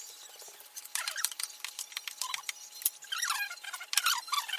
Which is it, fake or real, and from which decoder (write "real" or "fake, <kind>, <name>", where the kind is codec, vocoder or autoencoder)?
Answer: real